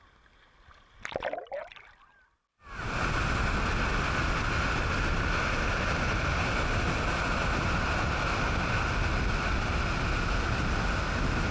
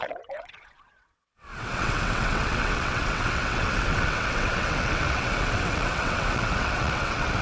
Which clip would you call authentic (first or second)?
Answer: first